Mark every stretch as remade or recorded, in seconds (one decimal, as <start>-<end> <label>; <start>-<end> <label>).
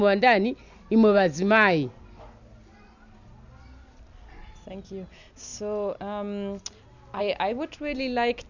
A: 0.0-8.5 recorded